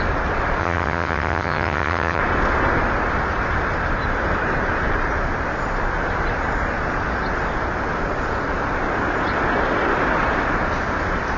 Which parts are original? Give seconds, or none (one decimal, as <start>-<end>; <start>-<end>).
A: 0.0-0.6; 2.2-11.4